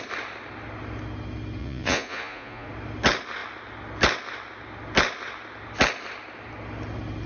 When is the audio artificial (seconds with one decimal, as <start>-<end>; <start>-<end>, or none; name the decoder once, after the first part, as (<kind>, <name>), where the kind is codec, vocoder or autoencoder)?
1.6-2.7 (vocoder, Vocos)